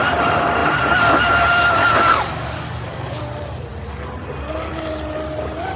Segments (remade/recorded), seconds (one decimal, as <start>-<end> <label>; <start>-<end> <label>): 0.0-1.8 recorded; 1.8-3.2 remade; 3.2-5.8 recorded